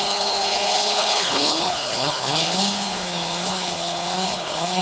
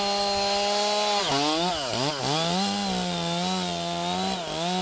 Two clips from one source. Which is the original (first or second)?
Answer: second